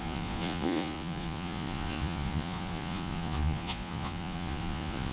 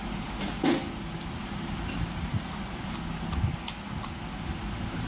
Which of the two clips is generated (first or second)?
first